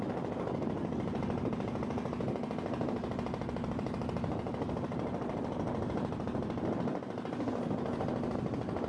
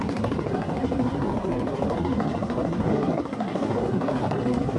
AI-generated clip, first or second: second